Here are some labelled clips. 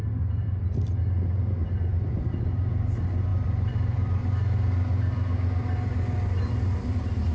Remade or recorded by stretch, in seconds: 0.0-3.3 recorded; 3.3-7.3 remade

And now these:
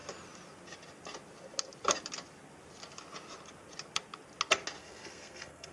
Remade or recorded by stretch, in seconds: 0.0-4.8 recorded; 4.8-5.7 remade

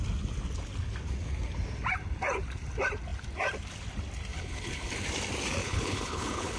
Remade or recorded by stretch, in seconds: 0.0-4.3 recorded; 4.3-4.9 remade; 4.9-5.6 recorded; 5.6-6.6 remade

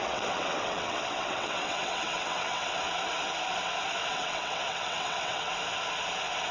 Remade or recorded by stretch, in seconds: 0.0-2.8 remade; 2.8-4.0 recorded; 4.0-5.5 remade; 5.5-6.5 recorded